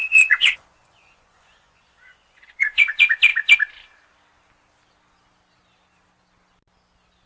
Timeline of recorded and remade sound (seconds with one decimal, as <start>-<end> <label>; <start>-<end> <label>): 0.0-2.9 remade; 2.9-7.3 recorded